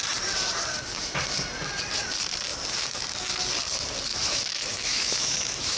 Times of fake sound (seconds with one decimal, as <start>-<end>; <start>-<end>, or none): 4.1-5.8